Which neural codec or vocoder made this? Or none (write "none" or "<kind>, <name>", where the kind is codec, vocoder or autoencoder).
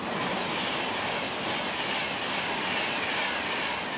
none